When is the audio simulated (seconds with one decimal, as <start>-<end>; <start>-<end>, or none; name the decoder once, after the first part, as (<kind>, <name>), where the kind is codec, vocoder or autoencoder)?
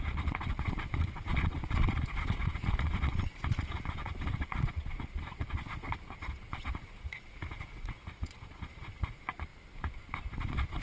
0.0-9.5 (vocoder, Vocos); 10.3-10.8